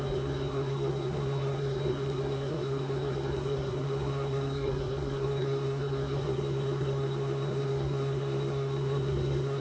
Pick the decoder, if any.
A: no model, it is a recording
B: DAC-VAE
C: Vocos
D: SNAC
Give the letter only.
D